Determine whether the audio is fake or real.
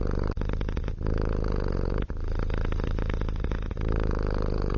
real